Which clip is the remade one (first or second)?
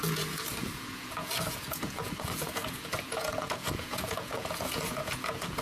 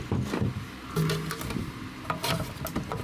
first